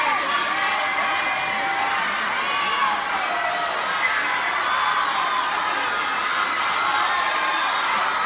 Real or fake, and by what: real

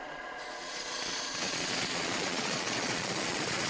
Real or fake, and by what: fake, vocoder, Vocos